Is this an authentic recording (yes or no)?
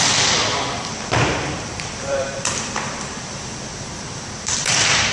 no